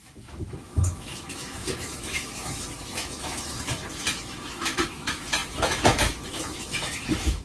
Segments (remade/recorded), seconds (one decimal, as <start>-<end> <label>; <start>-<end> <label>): 0.0-7.4 remade